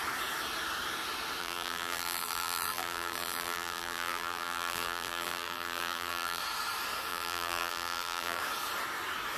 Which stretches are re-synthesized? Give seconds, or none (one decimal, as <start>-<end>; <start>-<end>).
1.4-6.4; 7.1-8.4